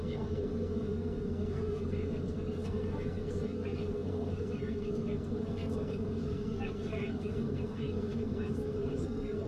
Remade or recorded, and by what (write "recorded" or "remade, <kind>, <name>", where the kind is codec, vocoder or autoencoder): remade, codec, SNAC